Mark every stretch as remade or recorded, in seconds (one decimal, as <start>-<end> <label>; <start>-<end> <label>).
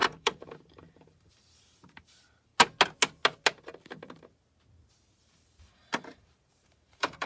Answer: 0.0-2.5 remade; 2.5-5.0 recorded; 5.0-7.3 remade